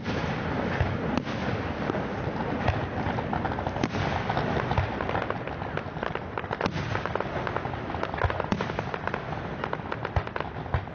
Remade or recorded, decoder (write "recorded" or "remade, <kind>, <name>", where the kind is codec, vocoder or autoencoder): recorded